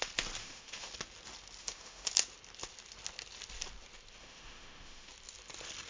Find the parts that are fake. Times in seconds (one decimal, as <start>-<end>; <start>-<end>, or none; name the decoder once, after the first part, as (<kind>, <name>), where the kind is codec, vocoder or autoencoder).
0.4-0.9 (autoencoder, DAC-VAE); 1.6-2.1; 4.2-5.1